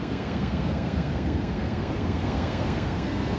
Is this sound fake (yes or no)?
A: yes